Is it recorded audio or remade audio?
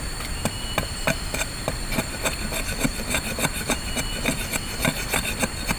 recorded